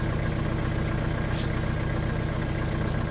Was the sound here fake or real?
real